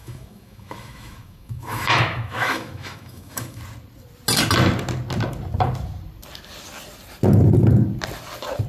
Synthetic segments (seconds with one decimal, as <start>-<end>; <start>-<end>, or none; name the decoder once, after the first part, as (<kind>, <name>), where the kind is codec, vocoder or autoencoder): 0.0-3.6 (autoencoder, DAC-VAE)